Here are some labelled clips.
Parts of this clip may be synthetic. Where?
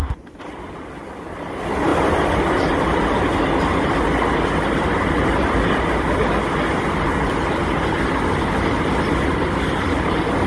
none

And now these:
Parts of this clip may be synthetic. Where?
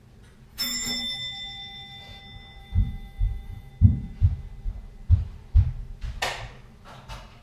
0.5-2.2 (autoencoder, DAC-VAE); 2.6-3.7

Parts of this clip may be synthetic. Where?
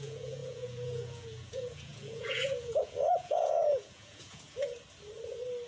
0.0-4.7 (vocoder, Vocos)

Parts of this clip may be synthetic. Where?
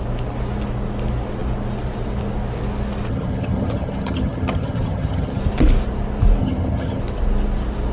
3.1-5.4 (vocoder, HiFi-GAN); 6.4-7.0